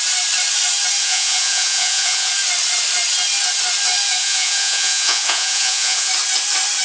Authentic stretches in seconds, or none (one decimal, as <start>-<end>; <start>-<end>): 0.0-1.0; 2.3-4.2; 6.1-6.8